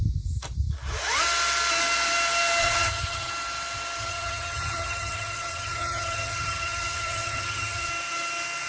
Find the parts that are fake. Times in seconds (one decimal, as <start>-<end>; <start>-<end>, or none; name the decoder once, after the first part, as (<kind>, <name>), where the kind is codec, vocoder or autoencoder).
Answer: 2.6-3.3 (vocoder, HiFi-GAN); 4.0-7.9